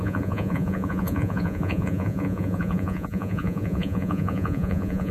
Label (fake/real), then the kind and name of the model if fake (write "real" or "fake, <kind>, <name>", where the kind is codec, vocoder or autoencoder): fake, vocoder, Vocos